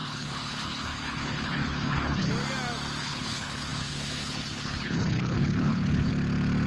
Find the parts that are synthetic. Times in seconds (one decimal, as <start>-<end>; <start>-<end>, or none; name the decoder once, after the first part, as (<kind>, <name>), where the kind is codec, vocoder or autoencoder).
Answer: 0.0-2.3 (codec, HILCodec); 3.0-6.1